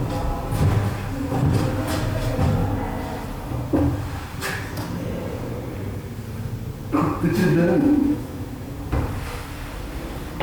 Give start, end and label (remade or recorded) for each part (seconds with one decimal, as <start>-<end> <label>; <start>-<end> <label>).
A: 0.0-7.4 recorded; 7.4-8.8 remade; 8.8-10.4 recorded